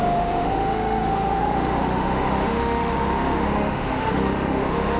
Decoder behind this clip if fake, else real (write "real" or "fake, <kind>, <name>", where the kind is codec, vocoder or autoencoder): fake, autoencoder, DAC-VAE